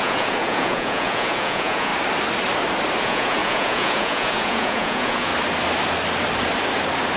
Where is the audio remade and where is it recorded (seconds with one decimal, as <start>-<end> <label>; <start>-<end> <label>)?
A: 0.0-1.9 remade; 1.9-3.0 recorded; 3.0-5.3 remade; 5.3-7.2 recorded